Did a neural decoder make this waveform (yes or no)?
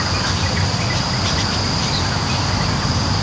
no